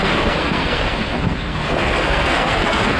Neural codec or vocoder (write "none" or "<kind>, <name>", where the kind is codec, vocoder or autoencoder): codec, SNAC